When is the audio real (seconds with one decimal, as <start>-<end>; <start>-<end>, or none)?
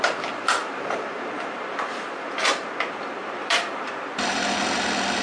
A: 0.0-0.6; 2.7-3.2; 3.9-5.2